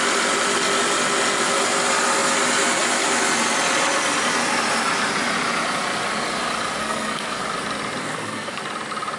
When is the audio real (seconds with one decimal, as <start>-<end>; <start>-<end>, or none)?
0.0-6.8; 7.4-8.0; 8.6-9.2